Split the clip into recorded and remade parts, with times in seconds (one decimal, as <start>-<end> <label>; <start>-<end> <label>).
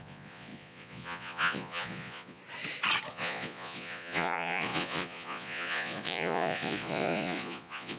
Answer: 0.0-2.4 remade; 2.4-3.1 recorded; 3.1-8.0 remade